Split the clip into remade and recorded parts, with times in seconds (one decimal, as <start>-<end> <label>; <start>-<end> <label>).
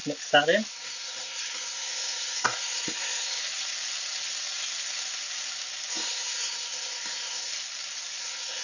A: 0.0-0.7 recorded; 0.7-3.4 remade; 3.4-5.9 recorded; 5.9-7.5 remade; 7.5-8.2 recorded; 8.2-8.6 remade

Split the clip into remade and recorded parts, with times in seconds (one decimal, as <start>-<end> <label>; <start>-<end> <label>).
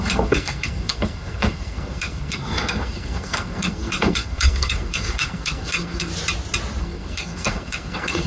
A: 0.0-6.1 remade; 6.1-6.8 recorded; 6.8-8.3 remade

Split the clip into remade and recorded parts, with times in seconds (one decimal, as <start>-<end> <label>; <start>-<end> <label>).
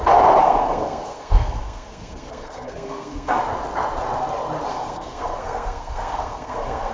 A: 0.0-0.4 recorded; 0.4-3.4 remade; 3.4-4.7 recorded; 4.7-6.9 remade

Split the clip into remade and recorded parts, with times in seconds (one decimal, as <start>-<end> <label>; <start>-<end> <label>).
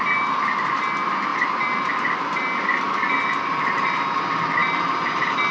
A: 0.0-5.5 recorded